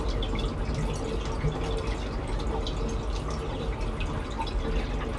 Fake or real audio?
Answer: real